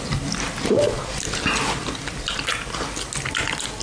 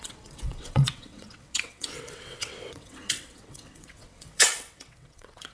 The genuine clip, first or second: first